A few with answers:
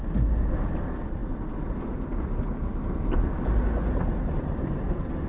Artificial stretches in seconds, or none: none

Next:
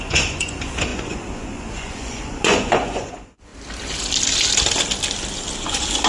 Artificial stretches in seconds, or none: 0.0-3.5 (vocoder, Vocos); 5.6-6.1